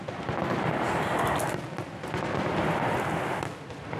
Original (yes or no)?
yes